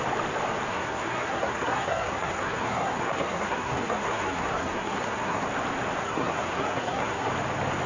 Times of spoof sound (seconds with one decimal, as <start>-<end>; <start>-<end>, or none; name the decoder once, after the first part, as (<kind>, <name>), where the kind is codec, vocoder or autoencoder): 0.7-5.4 (codec, SNAC); 6.0-7.3